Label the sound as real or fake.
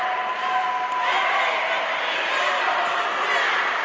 real